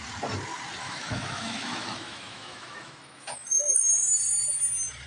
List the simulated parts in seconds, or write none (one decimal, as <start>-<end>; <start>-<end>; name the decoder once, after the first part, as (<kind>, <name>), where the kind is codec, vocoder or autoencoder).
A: 0.8-3.9 (autoencoder, DAC-VAE)